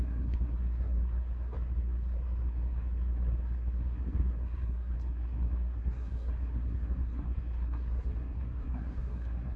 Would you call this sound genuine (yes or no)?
no